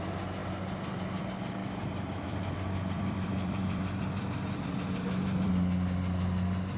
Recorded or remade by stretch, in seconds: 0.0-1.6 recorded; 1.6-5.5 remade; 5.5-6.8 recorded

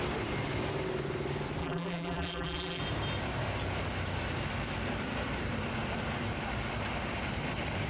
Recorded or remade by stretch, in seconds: 0.0-1.6 recorded; 1.6-2.8 remade; 2.8-7.9 recorded

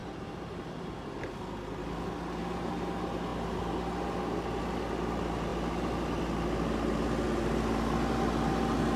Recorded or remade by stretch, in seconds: 0.0-1.2 remade; 1.2-9.0 recorded

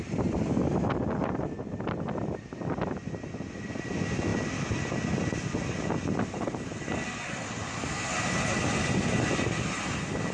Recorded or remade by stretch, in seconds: 0.0-4.3 recorded; 4.3-5.1 remade; 5.1-10.3 recorded

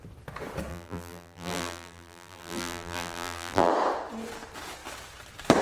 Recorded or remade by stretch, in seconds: 0.0-0.7 recorded; 0.7-3.7 remade; 3.7-5.6 recorded

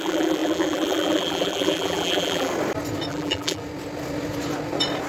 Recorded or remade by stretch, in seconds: 0.0-2.5 remade; 2.5-3.1 recorded; 3.1-3.6 remade; 3.6-5.1 recorded

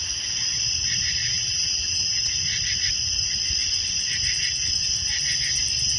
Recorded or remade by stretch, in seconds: 0.0-1.2 recorded; 1.2-2.2 remade; 2.2-6.0 recorded

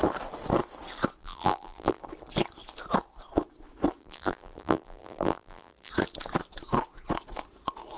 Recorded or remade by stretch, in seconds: 0.0-1.2 recorded; 1.2-2.0 remade; 2.0-4.0 recorded; 4.0-5.9 remade; 5.9-8.0 recorded